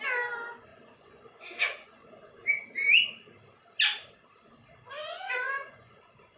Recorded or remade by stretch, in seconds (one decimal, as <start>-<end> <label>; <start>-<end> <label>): 0.0-0.7 recorded; 0.7-2.1 remade; 2.1-5.0 recorded; 5.0-6.4 remade